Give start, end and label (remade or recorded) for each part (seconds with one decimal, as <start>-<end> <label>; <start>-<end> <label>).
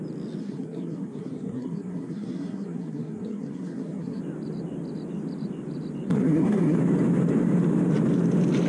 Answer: 0.0-0.4 recorded; 0.4-4.2 remade; 4.2-6.1 recorded; 6.1-6.8 remade; 6.8-8.7 recorded